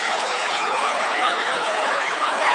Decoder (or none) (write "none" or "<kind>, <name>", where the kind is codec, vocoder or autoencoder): codec, HILCodec